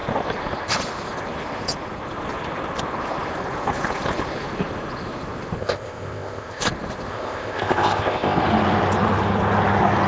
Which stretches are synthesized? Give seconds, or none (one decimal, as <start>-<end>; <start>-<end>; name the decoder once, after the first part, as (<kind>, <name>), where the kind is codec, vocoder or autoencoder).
5.6-6.6 (codec, ZipCodec); 7.1-8.4